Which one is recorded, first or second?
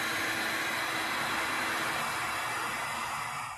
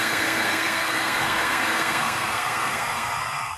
first